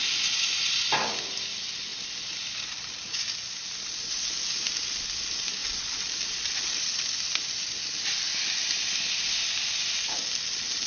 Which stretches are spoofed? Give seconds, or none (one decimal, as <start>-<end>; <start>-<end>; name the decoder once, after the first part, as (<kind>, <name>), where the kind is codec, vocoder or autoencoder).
none